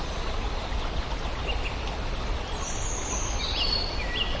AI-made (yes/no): no